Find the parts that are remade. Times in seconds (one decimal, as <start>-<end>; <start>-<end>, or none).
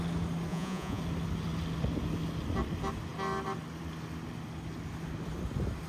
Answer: 0.5-1.0